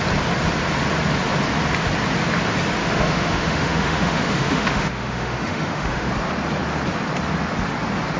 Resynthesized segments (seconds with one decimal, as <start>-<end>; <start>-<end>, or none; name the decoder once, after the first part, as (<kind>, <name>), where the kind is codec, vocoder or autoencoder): 2.8-6.1 (autoencoder, DAC-VAE)